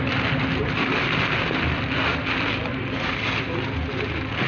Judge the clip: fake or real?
real